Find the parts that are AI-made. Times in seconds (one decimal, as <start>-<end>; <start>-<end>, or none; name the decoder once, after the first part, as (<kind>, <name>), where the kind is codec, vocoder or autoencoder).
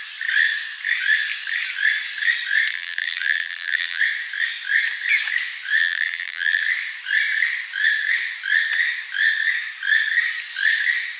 2.7-4.0 (vocoder, BigVGAN v2); 5.8-6.6